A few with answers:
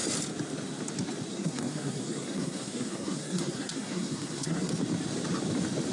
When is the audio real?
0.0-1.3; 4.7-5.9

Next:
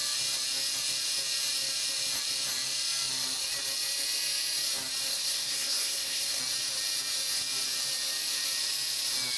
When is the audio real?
0.0-5.1; 6.4-9.4